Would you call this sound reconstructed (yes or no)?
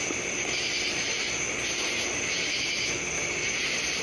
no